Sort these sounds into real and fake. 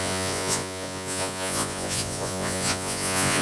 fake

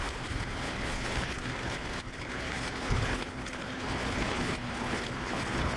fake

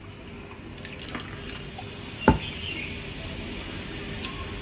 real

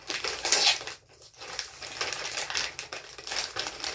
real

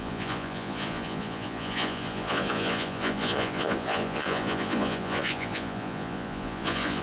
fake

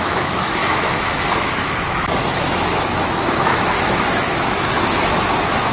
fake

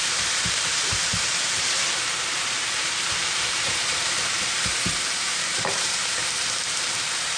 fake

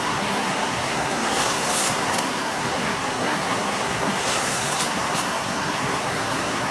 fake